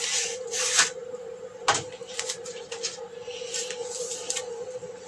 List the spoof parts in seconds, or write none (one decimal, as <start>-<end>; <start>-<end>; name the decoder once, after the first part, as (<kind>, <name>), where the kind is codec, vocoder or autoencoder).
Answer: none